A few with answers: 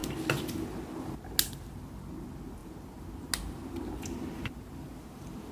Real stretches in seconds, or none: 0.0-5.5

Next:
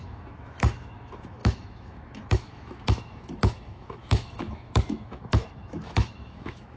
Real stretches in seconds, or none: none

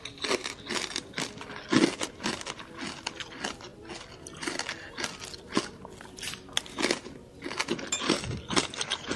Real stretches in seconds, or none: 0.0-9.2